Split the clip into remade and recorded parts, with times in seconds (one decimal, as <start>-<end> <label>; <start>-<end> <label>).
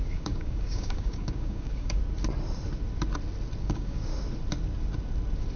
0.0-2.0 remade; 2.0-3.6 recorded; 3.6-4.1 remade; 4.1-5.6 recorded